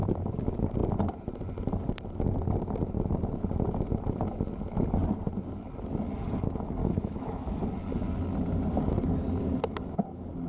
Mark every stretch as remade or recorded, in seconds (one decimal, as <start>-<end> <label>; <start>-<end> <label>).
0.0-6.8 recorded; 6.8-7.6 remade; 7.6-10.5 recorded